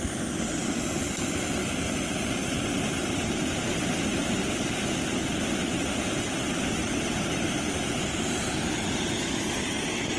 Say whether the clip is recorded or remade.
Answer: recorded